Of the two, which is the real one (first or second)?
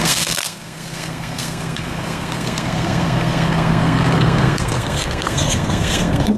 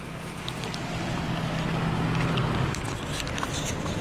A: second